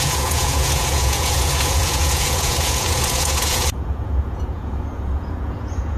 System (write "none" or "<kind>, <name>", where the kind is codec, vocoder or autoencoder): vocoder, Vocos